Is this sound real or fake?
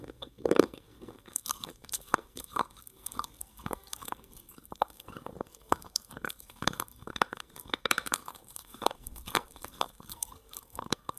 fake